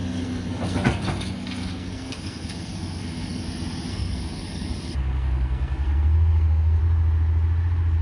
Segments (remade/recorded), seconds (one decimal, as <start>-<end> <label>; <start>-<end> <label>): 0.0-3.4 remade; 3.4-3.9 recorded; 3.9-6.8 remade; 6.8-8.0 recorded